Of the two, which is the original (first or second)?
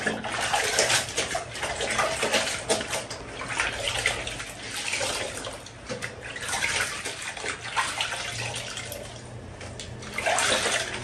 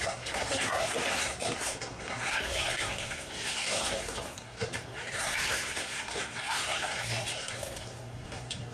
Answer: first